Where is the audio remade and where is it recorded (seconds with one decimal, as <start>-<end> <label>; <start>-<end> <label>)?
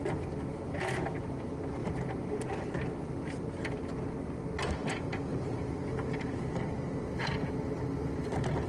0.0-1.8 recorded; 1.8-3.3 remade; 3.3-5.3 recorded; 5.3-6.4 remade; 6.4-8.7 recorded